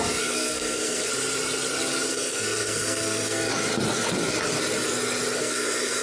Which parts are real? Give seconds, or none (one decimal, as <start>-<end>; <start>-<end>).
1.1-2.1; 3.5-5.4